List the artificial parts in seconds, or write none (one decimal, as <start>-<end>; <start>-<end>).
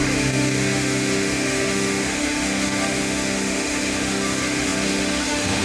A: 0.0-5.6